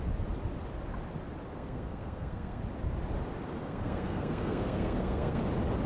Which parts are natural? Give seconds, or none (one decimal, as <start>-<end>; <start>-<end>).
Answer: 0.0-1.5; 2.6-3.6; 5.4-5.9